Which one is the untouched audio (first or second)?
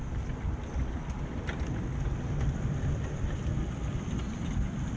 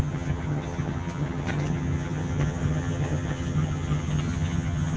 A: first